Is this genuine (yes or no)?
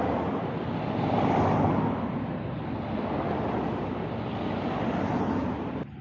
yes